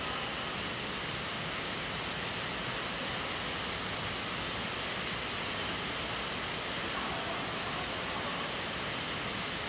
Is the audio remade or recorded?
recorded